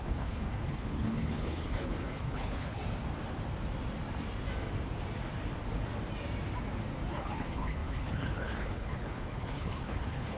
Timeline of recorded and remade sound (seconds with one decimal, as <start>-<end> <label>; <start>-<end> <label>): 0.0-2.8 remade; 2.8-7.1 recorded; 7.1-10.4 remade